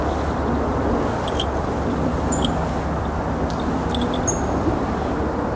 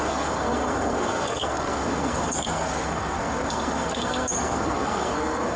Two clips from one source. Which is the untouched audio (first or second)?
first